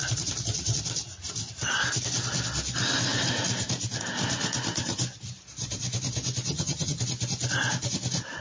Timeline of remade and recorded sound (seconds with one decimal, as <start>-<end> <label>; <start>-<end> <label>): 0.0-6.5 recorded; 6.5-7.0 remade; 7.0-8.4 recorded